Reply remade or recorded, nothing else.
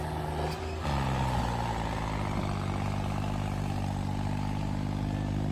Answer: recorded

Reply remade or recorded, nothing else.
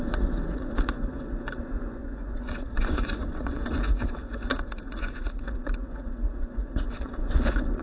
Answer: remade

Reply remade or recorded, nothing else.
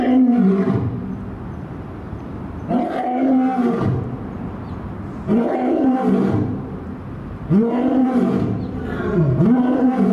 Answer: recorded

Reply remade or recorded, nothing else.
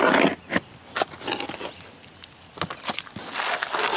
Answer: recorded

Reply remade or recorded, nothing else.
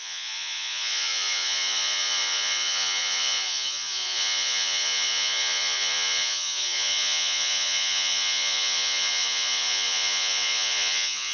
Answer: remade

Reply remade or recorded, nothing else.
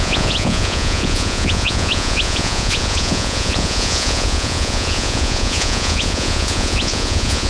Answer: remade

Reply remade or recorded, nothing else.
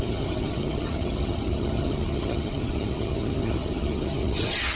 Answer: remade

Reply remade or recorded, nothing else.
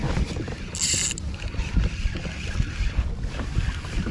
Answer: recorded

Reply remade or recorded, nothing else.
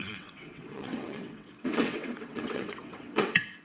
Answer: remade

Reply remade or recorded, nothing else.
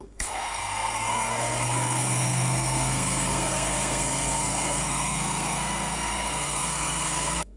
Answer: remade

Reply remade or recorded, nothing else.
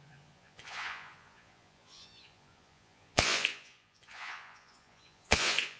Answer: remade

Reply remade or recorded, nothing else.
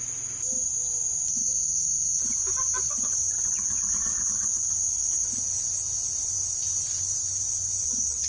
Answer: recorded